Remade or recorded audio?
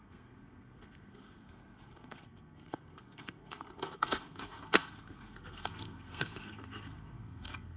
remade